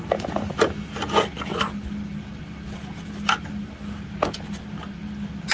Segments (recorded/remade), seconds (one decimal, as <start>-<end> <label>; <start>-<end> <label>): 0.0-5.5 recorded